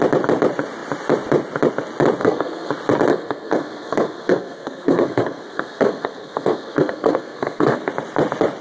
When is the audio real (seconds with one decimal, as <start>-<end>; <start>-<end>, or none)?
0.0-2.2; 2.7-3.1; 7.9-8.6